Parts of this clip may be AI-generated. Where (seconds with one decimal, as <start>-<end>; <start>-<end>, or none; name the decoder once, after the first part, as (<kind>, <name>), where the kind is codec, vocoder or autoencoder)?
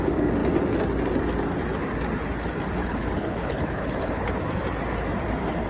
2.8-4.3 (codec, HILCodec)